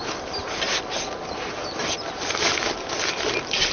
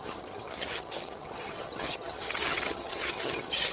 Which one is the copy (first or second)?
second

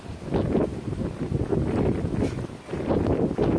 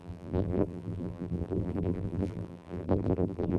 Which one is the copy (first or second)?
second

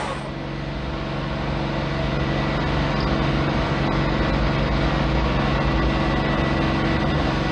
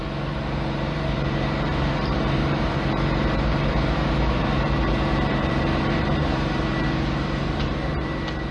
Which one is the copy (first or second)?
second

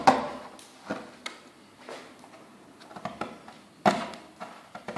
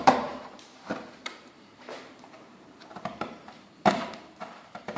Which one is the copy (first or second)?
second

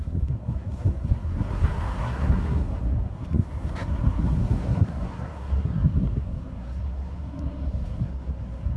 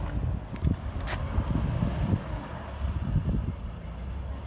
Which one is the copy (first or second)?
first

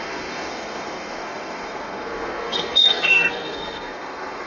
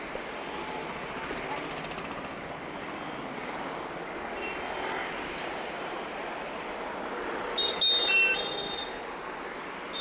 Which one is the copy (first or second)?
first